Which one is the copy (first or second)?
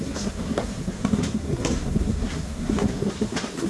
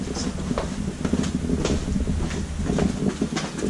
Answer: first